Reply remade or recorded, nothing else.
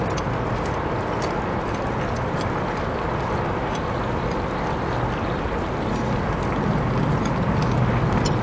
recorded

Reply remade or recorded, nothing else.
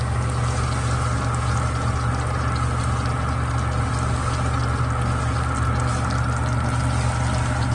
recorded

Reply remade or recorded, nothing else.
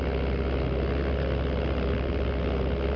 recorded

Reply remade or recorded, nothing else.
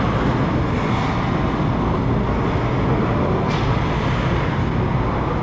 recorded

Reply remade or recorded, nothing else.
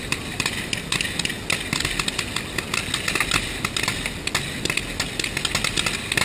recorded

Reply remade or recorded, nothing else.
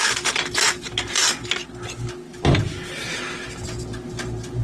recorded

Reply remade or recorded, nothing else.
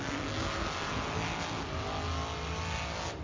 recorded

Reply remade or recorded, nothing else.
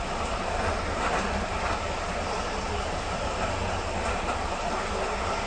recorded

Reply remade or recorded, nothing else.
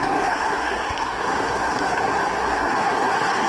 remade